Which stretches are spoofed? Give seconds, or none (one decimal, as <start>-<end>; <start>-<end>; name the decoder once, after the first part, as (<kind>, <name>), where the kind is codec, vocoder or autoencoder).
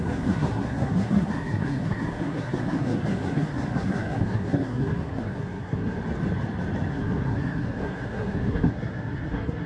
0.0-6.0 (codec, SNAC); 6.9-9.7